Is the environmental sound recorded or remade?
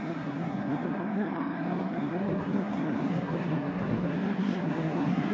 remade